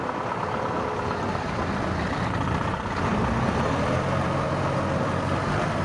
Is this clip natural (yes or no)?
yes